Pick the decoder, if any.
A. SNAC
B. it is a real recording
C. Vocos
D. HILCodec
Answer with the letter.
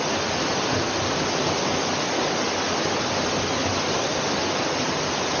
B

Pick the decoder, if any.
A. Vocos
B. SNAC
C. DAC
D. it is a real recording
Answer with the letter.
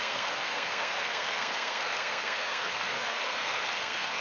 B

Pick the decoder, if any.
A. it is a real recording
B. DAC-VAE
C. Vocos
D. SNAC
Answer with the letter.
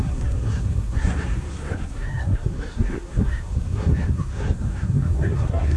D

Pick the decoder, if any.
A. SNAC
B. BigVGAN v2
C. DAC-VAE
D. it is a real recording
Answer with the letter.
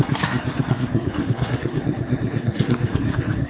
A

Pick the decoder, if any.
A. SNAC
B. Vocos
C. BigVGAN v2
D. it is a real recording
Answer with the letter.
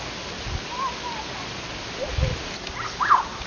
D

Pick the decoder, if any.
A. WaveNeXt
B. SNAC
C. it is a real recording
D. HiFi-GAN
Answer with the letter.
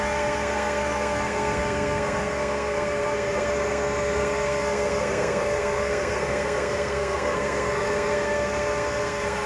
B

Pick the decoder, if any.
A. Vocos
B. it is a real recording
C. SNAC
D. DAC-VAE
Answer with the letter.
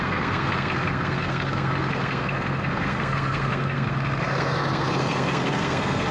C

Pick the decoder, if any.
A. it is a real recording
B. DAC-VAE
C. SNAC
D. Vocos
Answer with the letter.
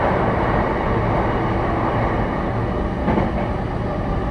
A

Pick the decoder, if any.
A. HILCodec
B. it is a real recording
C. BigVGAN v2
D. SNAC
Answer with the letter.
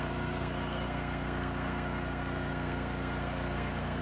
D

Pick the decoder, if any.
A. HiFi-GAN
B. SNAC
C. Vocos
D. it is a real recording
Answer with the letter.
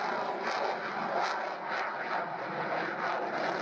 D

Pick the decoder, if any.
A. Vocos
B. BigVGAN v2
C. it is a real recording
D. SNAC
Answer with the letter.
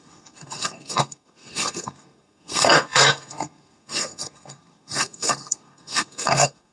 D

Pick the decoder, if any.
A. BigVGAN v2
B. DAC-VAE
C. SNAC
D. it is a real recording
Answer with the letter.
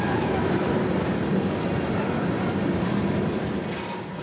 D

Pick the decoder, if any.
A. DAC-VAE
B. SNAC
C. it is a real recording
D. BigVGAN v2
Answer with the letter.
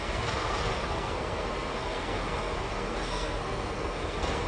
B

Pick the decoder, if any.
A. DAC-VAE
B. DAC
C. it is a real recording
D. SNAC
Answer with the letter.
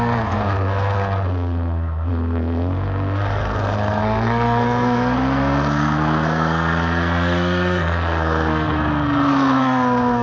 D